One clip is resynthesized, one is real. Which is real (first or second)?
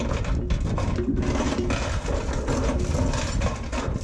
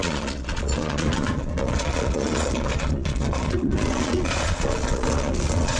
first